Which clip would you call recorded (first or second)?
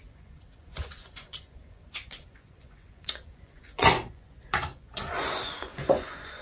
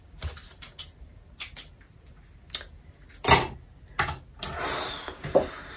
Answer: second